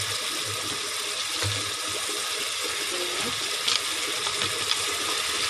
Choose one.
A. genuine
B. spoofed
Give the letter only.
A